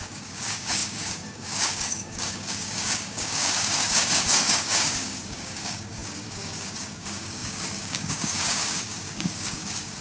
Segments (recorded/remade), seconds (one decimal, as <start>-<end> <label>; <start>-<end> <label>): 0.0-10.0 remade